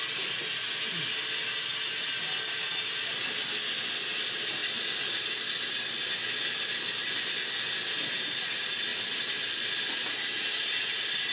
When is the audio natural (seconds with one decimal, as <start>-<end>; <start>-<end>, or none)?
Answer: 0.0-11.3